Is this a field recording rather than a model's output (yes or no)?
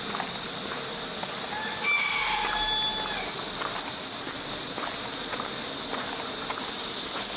yes